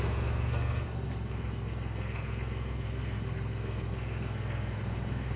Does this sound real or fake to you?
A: fake